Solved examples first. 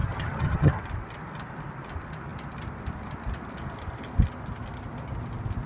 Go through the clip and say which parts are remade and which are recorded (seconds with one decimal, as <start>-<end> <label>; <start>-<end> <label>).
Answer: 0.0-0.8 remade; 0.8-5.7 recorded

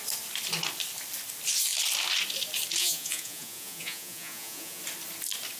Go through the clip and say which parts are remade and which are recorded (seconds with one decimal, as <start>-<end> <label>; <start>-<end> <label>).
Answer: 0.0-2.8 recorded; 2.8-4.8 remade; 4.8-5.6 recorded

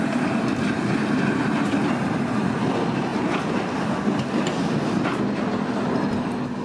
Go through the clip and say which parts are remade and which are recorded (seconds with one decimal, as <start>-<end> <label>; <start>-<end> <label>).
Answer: 0.0-6.6 recorded

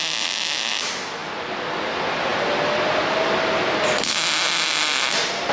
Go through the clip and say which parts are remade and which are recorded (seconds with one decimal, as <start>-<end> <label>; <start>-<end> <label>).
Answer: 0.0-5.5 recorded

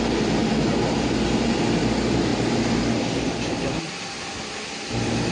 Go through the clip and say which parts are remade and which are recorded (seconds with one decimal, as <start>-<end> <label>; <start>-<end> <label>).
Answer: 0.0-5.3 recorded

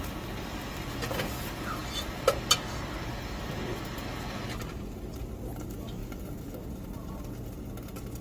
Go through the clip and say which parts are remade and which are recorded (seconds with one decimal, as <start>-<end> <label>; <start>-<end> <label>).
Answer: 0.0-8.2 recorded